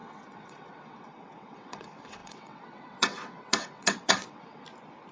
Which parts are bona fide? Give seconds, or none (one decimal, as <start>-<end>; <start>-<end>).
4.6-5.1